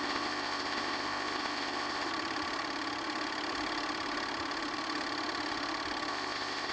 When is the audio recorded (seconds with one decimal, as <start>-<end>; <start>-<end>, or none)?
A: 2.1-6.1